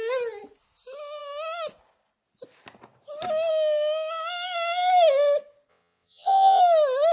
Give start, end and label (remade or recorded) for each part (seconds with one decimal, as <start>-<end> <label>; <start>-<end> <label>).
0.0-5.7 recorded; 5.7-6.6 remade; 6.6-7.1 recorded